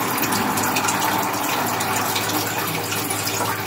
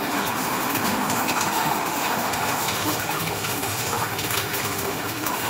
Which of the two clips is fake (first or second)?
second